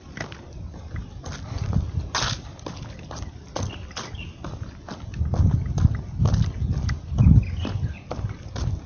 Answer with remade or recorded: recorded